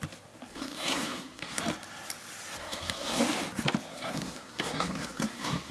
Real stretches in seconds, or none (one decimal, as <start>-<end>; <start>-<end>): 0.0-0.5; 1.6-2.6; 3.2-3.9

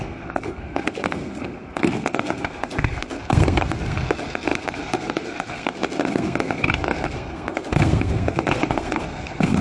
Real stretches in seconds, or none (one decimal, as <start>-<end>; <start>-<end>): none